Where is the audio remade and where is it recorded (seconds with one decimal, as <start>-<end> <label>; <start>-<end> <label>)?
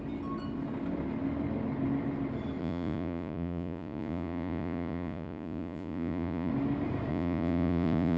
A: 0.0-2.6 recorded; 2.6-6.5 remade; 6.5-7.1 recorded; 7.1-8.2 remade